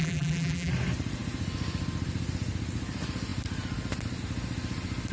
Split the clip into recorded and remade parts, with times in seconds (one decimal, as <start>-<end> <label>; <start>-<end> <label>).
0.0-0.7 remade; 0.7-5.1 recorded